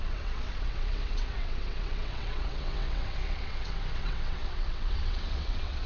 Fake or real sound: fake